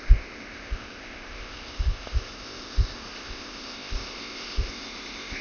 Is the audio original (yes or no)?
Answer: no